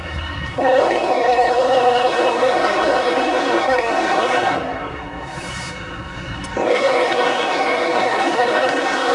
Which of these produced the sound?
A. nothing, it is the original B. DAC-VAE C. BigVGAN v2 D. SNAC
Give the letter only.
D